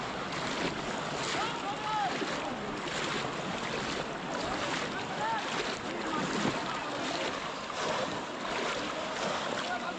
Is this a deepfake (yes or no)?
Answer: no